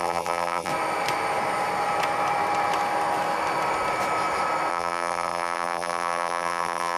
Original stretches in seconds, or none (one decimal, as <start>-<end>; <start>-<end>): 0.7-4.7